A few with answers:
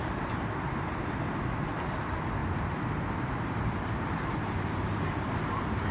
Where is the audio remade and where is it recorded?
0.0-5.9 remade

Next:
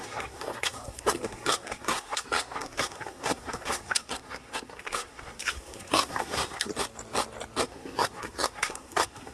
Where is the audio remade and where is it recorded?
0.0-6.7 remade; 6.7-7.6 recorded; 7.6-9.3 remade